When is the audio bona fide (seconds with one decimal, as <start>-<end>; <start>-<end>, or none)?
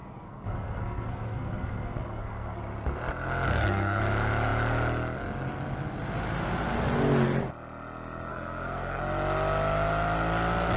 2.6-3.5; 4.0-8.3; 9.0-10.8